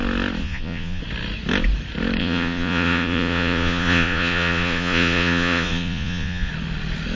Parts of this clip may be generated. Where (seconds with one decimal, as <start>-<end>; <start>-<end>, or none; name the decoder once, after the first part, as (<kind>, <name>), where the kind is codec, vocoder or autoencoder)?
0.4-1.0 (vocoder, Vocos); 2.2-6.5